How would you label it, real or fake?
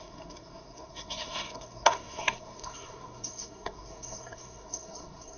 fake